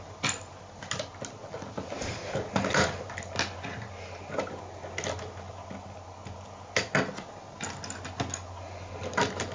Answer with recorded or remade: recorded